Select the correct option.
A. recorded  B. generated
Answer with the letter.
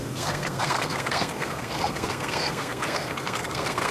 B